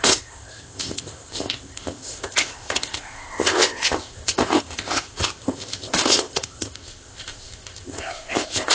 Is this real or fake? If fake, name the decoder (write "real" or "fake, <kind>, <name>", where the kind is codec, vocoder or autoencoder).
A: fake, codec, ZipCodec